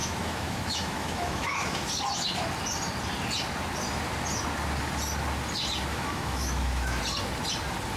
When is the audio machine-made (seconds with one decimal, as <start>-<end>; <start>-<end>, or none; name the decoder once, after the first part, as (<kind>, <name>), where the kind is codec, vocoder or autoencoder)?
0.0-1.9 (autoencoder, DAC-VAE); 5.9-7.0